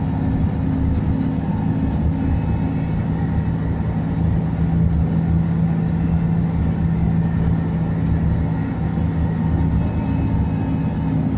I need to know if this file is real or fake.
real